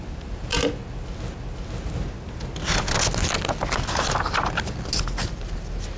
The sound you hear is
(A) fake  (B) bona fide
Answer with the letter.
B